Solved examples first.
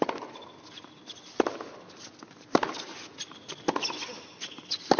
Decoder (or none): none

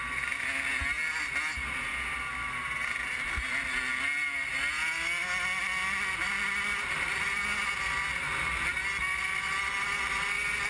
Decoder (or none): none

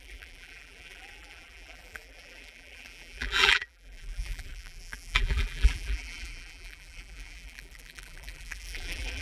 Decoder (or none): vocoder, BigVGAN v2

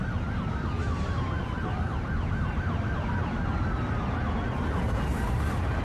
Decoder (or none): none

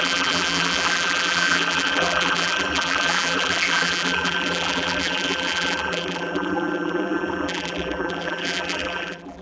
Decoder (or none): vocoder, BigVGAN v2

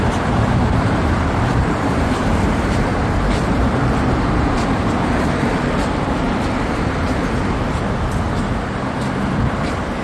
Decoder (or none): vocoder, BigVGAN v2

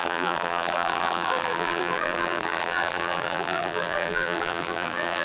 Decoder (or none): vocoder, BigVGAN v2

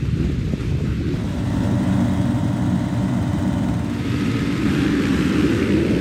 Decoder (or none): vocoder, BigVGAN v2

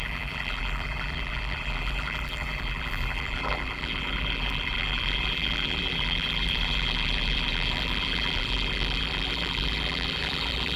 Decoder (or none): vocoder, BigVGAN v2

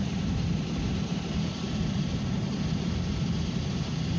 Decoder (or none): vocoder, BigVGAN v2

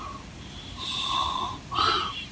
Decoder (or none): none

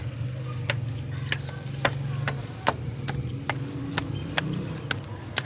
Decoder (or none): none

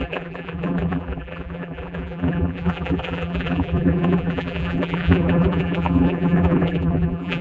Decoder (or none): vocoder, BigVGAN v2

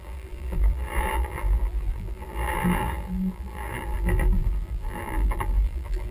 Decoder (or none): vocoder, BigVGAN v2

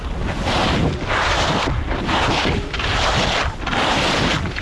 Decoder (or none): none